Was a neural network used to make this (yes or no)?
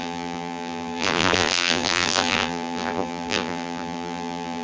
yes